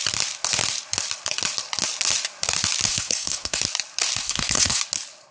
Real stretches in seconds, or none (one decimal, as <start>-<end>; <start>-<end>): 0.0-2.9; 3.6-4.2; 4.8-5.3